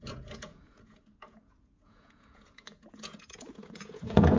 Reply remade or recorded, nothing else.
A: remade